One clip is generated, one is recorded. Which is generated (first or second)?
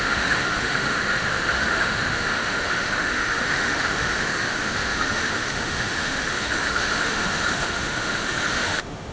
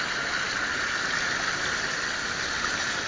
first